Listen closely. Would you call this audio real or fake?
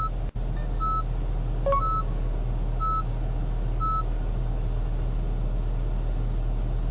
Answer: real